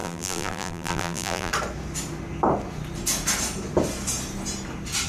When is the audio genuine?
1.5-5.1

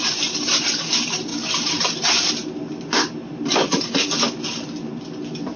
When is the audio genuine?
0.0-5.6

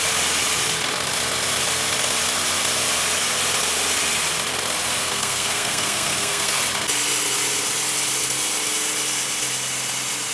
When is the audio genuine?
0.0-5.0; 6.6-10.3